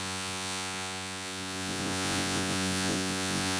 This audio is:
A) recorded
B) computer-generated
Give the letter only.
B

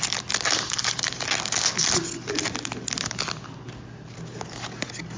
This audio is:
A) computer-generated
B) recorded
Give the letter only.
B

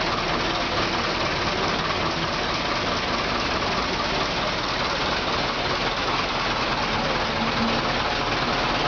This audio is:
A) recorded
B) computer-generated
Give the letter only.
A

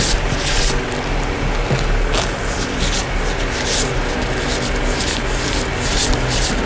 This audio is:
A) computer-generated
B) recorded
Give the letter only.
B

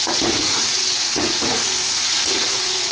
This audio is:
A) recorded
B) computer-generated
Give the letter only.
B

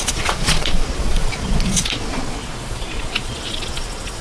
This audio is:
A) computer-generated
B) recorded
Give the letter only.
A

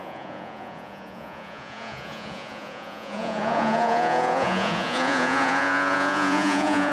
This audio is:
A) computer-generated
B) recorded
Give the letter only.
A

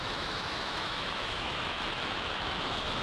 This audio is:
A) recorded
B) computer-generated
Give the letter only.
B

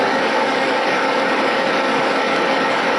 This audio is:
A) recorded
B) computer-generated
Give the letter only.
B